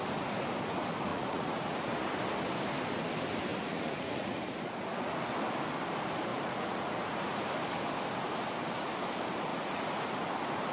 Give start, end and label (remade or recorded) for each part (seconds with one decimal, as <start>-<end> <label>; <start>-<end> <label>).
0.0-1.1 recorded; 1.1-2.1 remade; 2.1-3.5 recorded; 3.5-5.1 remade; 5.1-6.3 recorded; 6.3-7.4 remade; 7.4-9.5 recorded; 9.5-10.2 remade; 10.2-10.7 recorded